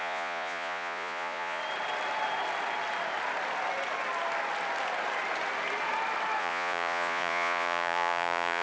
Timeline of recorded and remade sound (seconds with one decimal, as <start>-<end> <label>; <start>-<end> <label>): 0.0-1.6 remade; 1.6-6.4 recorded; 6.4-8.6 remade